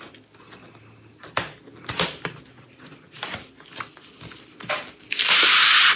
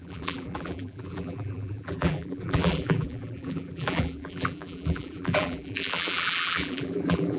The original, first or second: first